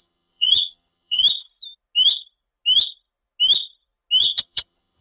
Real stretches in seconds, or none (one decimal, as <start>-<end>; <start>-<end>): 1.2-4.2